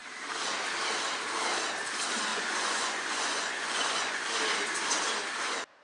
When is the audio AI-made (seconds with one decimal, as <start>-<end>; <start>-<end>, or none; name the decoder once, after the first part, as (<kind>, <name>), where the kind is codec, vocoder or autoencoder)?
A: 2.3-4.3 (vocoder, Vocos)